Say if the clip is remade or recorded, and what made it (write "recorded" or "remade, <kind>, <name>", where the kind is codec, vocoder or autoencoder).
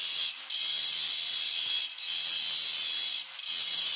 remade, vocoder, BigVGAN v2